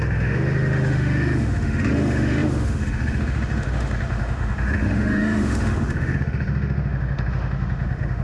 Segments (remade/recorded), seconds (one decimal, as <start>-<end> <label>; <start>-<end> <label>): 0.0-8.2 remade